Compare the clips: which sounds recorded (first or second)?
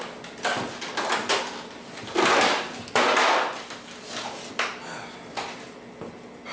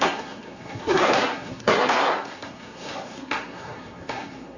first